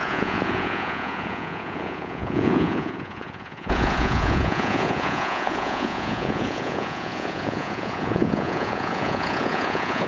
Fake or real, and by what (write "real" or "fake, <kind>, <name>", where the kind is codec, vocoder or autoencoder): fake, vocoder, Vocos